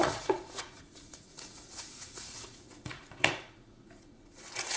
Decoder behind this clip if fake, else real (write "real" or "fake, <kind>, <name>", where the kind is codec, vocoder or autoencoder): fake, vocoder, Vocos